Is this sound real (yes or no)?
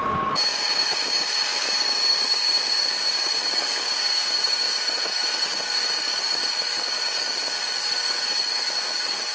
no